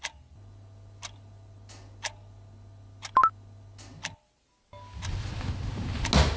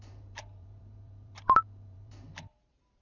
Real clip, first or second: first